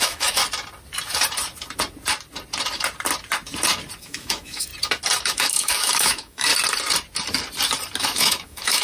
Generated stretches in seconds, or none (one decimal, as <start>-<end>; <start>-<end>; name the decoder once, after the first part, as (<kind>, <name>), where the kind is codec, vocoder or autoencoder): 0.0-0.4 (autoencoder, DAC-VAE); 4.0-4.7; 5.2-6.5; 8.0-8.8